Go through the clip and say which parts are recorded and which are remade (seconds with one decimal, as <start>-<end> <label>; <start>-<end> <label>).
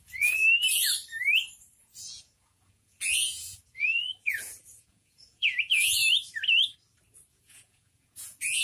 0.0-0.4 remade; 0.4-1.8 recorded; 1.8-6.0 remade; 6.0-7.3 recorded; 7.3-8.6 remade